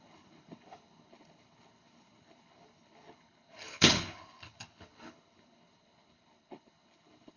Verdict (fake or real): fake